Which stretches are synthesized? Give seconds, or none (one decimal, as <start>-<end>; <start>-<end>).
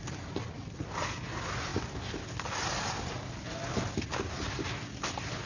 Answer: none